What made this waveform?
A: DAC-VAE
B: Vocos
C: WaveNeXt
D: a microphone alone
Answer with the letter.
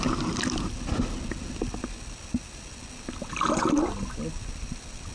D